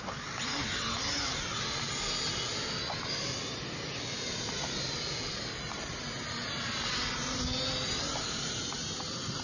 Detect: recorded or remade recorded